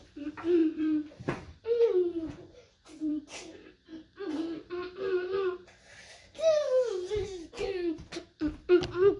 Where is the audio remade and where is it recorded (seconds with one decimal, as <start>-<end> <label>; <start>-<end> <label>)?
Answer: 0.0-0.6 recorded; 0.6-3.1 remade; 3.1-9.2 recorded